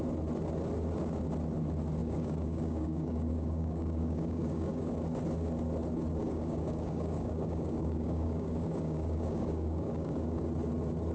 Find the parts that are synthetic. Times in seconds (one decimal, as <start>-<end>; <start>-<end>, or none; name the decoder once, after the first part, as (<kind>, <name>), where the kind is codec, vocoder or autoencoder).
2.0-4.9 (codec, DAC); 6.2-10.4